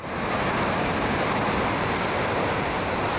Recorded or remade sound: remade